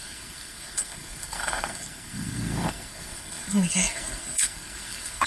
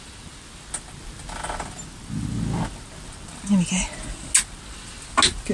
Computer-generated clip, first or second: first